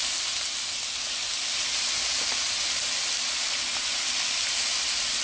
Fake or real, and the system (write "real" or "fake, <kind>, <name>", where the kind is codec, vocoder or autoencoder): real